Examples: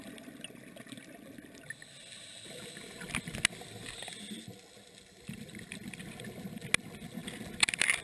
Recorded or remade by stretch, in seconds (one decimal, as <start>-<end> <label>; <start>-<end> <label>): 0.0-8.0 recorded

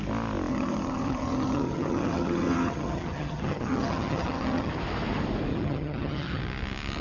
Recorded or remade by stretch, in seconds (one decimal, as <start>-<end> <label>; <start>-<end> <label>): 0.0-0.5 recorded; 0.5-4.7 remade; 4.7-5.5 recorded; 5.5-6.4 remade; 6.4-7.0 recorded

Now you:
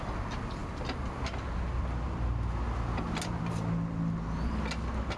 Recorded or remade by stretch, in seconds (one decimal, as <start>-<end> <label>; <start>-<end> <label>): 0.0-5.2 recorded